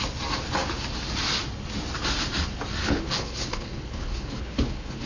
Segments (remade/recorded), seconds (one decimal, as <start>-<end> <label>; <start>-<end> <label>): 0.0-2.8 recorded; 2.8-5.1 remade